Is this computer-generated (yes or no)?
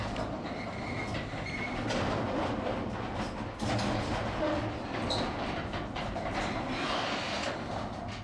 no